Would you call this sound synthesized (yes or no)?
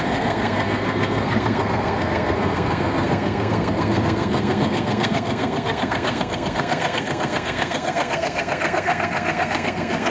yes